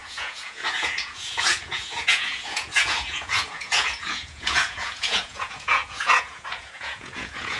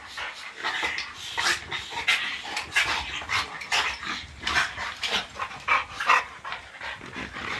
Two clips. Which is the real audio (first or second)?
second